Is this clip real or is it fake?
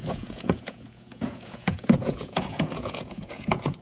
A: fake